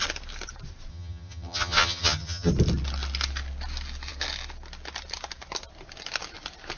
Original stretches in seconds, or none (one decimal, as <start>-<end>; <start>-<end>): 0.0-0.9; 2.5-6.8